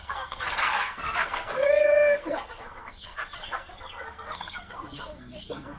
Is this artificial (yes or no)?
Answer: yes